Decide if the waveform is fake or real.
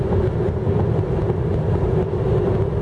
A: real